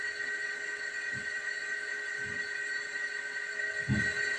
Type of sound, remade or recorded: recorded